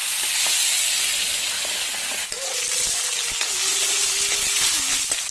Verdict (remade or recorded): recorded